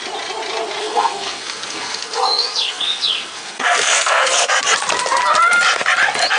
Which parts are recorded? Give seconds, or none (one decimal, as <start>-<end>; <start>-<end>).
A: 0.0-0.8; 4.6-6.4